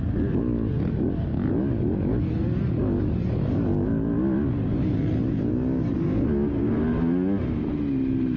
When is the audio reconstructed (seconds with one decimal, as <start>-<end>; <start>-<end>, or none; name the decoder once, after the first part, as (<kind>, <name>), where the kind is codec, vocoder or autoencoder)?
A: none